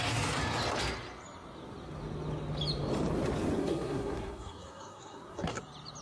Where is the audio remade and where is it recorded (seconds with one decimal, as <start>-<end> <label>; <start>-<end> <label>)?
0.0-3.6 recorded; 3.6-5.6 remade; 5.6-6.0 recorded